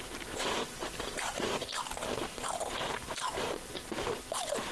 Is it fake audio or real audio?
fake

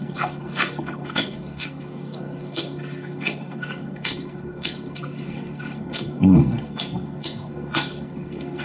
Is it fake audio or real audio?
fake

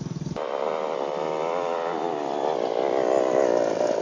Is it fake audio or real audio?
real